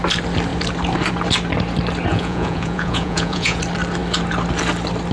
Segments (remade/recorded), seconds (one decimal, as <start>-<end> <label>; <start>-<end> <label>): 0.0-2.1 recorded; 2.1-3.6 remade; 3.6-5.1 recorded